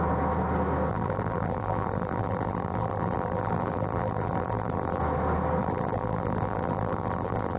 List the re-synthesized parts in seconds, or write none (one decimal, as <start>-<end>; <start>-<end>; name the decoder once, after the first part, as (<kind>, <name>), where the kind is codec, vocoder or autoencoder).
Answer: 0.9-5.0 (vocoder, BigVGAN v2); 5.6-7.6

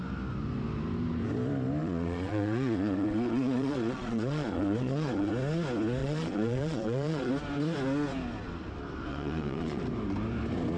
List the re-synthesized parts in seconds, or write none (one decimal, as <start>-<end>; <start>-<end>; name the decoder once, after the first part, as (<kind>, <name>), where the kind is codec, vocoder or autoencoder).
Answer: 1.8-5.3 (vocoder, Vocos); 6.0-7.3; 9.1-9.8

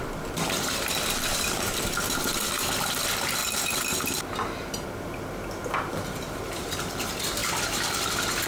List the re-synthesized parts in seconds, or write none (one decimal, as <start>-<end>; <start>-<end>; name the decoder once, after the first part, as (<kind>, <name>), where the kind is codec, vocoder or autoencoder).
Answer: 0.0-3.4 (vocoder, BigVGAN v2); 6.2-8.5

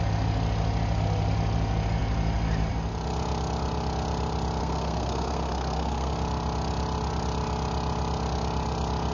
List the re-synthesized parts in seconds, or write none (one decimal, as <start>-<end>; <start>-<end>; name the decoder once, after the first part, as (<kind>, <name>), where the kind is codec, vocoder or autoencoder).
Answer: 4.6-6.1 (codec, SNAC)